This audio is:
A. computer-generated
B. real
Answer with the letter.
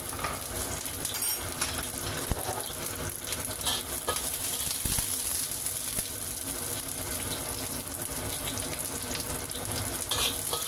B